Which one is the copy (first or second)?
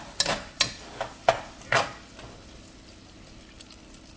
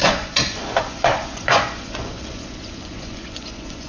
second